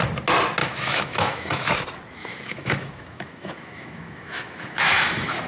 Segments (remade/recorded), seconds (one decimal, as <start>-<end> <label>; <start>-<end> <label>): 0.0-0.6 recorded; 0.6-1.7 remade; 1.7-2.2 recorded; 2.2-5.5 remade